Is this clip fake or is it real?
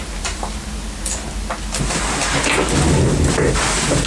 real